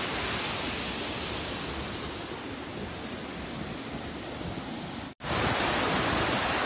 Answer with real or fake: real